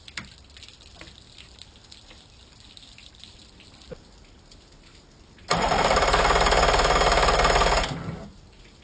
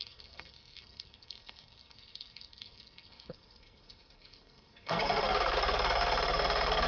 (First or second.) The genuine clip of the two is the first